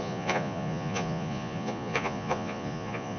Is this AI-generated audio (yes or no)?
yes